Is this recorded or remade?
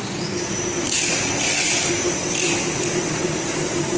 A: remade